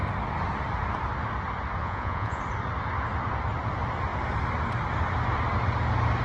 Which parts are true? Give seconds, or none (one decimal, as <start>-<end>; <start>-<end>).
0.0-1.8; 2.4-6.2